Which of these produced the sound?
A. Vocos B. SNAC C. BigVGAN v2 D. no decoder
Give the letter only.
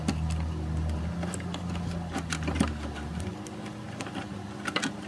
D